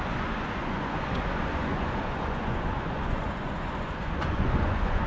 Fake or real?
fake